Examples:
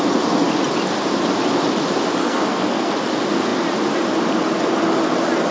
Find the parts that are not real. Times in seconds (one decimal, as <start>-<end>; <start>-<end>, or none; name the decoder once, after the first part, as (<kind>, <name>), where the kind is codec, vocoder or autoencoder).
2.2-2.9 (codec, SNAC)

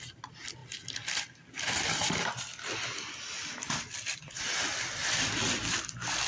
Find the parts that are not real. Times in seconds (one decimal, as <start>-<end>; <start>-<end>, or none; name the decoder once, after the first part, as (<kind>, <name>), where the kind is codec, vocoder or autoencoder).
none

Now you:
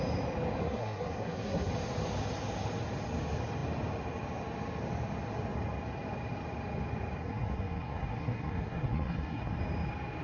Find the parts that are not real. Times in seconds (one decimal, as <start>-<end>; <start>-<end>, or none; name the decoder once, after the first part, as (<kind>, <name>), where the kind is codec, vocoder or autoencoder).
0.6-1.7 (codec, SNAC); 7.2-9.6

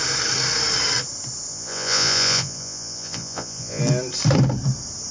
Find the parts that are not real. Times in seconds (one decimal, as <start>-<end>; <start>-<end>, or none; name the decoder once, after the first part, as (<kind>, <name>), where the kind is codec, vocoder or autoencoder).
1.5-3.8 (vocoder, Vocos)

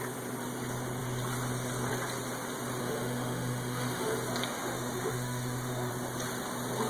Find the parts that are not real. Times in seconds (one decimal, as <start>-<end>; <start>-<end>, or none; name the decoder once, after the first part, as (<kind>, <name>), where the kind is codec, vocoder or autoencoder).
2.8-4.1 (autoencoder, DAC-VAE); 4.5-5.9

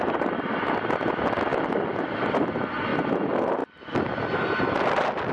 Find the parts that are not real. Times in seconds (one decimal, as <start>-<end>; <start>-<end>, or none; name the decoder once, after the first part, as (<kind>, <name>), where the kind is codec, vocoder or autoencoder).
none

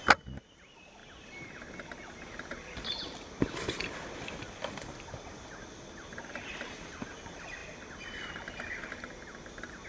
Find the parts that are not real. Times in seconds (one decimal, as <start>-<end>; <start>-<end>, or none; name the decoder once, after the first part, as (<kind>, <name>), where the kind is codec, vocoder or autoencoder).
4.6-6.3 (vocoder, BigVGAN v2); 7.6-8.9